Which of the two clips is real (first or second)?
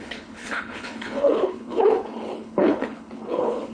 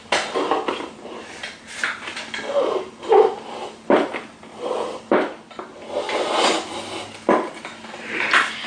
second